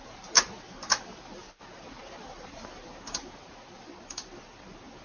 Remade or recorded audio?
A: recorded